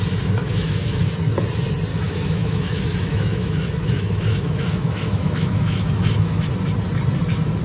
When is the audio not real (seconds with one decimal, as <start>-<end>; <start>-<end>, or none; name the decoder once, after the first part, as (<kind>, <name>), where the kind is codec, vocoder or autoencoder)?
0.4-1.1 (autoencoder, DAC-VAE); 1.9-6.5